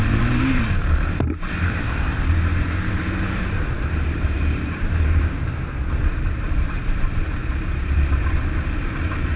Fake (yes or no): yes